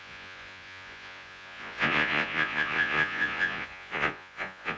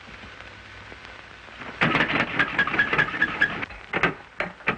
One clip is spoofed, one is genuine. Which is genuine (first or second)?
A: second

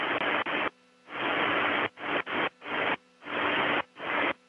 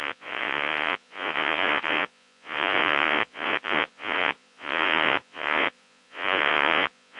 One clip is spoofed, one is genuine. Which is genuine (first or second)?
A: first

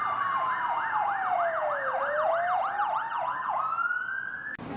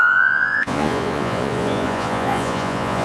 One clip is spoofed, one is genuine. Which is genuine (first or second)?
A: first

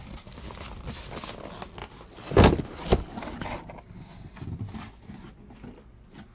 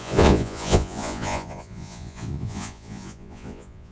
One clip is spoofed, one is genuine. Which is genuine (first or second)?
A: first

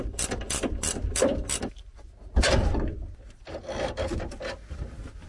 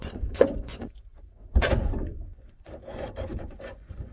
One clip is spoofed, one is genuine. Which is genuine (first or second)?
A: first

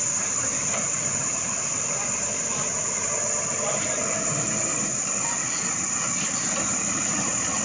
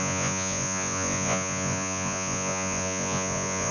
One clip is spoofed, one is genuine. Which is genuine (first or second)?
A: first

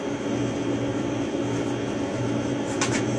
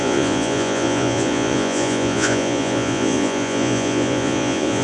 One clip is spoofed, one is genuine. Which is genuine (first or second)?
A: first